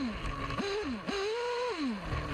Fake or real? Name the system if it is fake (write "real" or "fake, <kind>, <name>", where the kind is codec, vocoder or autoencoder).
real